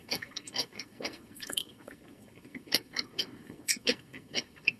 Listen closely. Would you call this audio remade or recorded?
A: remade